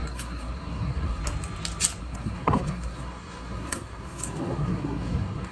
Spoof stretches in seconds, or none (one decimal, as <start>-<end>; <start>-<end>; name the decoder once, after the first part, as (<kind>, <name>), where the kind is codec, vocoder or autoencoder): 0.0-1.2 (codec, SNAC); 2.0-5.5